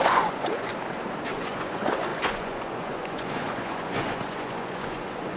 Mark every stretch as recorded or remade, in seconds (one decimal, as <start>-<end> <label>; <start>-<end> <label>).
0.0-0.7 remade; 0.7-1.3 recorded; 1.3-5.4 remade